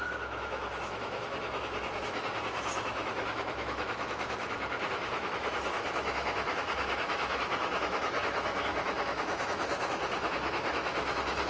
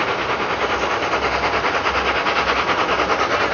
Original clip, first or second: second